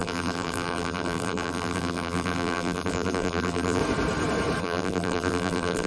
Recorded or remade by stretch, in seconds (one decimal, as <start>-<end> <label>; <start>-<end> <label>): 0.0-3.8 remade; 3.8-4.6 recorded; 4.6-5.9 remade